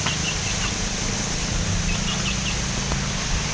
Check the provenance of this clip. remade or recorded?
recorded